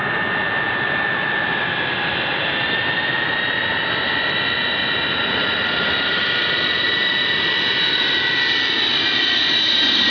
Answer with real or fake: fake